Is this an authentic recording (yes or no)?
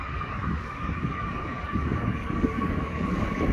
no